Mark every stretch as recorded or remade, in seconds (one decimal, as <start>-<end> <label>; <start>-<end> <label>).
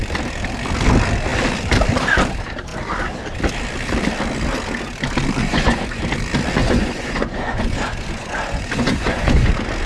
0.0-5.4 recorded; 5.4-6.0 remade; 6.0-6.6 recorded; 6.6-9.5 remade; 9.5-9.9 recorded